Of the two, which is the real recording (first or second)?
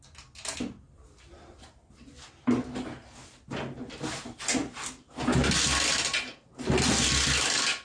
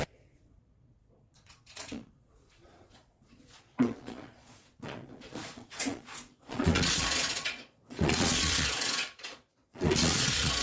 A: first